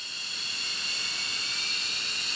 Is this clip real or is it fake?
real